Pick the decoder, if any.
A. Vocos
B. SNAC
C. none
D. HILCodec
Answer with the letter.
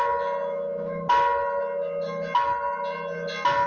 C